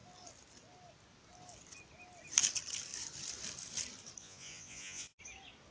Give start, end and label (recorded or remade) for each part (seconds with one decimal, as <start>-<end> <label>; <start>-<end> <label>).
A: 0.0-4.2 recorded; 4.2-5.2 remade; 5.2-5.7 recorded

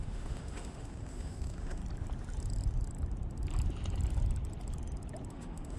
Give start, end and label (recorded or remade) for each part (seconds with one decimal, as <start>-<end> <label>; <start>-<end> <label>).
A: 0.0-1.8 remade; 1.8-5.3 recorded; 5.3-5.8 remade

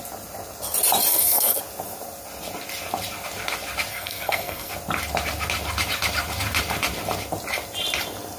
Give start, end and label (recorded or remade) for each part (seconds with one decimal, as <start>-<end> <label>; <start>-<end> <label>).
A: 0.0-1.1 recorded; 1.1-1.6 remade; 1.6-3.9 recorded; 3.9-4.7 remade; 4.7-8.4 recorded

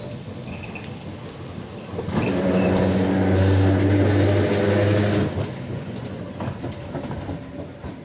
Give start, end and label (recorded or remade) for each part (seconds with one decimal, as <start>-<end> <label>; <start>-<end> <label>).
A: 0.0-5.7 recorded; 5.7-6.2 remade; 6.2-8.0 recorded

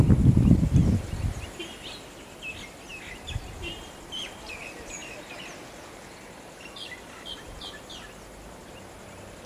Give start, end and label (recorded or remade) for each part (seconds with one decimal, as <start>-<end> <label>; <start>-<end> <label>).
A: 0.0-9.5 recorded

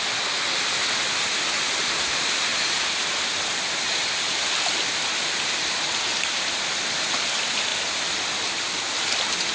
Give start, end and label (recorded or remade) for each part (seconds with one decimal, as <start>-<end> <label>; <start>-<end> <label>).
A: 0.0-9.5 recorded

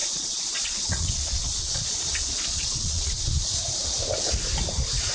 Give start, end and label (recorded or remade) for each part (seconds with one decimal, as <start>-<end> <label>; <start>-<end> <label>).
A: 0.0-3.1 remade; 3.1-5.1 recorded

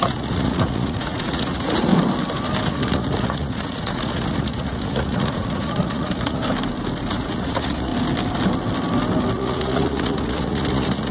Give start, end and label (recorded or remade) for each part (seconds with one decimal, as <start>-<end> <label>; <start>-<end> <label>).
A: 0.0-1.9 remade; 1.9-2.7 recorded; 2.7-6.4 remade; 6.4-7.1 recorded; 7.1-7.9 remade; 7.9-9.3 recorded; 9.3-11.1 remade